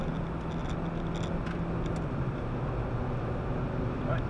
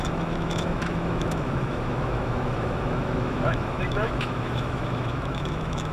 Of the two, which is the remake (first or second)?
second